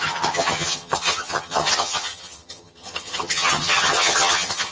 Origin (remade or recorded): remade